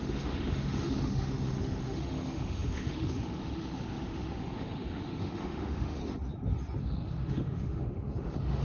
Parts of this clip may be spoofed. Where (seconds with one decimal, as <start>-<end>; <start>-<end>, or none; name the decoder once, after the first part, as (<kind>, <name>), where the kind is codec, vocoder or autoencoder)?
0.0-6.0 (autoencoder, DAC-VAE); 6.8-8.6